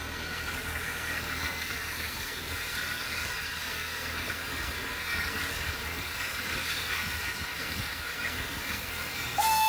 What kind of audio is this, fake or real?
fake